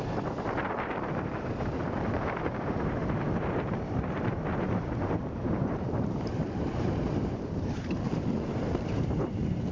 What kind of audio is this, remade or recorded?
remade